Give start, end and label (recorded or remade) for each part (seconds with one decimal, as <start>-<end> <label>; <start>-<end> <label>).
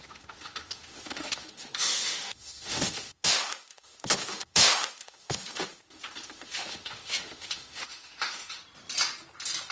0.0-8.6 remade; 8.6-9.7 recorded